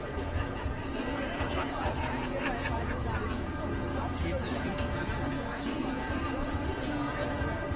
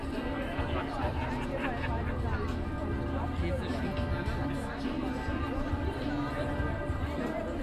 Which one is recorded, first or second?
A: second